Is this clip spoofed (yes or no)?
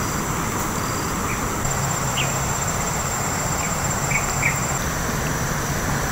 no